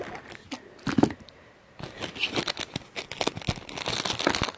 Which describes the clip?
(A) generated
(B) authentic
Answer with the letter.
B